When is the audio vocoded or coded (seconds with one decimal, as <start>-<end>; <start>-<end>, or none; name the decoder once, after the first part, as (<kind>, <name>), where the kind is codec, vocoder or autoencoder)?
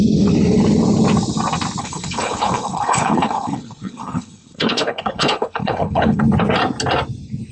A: 1.8-6.2 (codec, HILCodec)